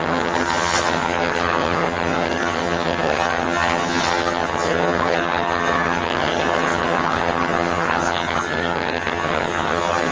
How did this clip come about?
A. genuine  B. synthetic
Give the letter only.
B